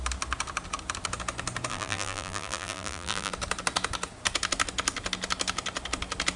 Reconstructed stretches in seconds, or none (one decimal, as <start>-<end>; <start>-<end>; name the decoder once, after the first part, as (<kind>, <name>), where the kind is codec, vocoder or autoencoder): 1.7-3.3 (vocoder, BigVGAN v2)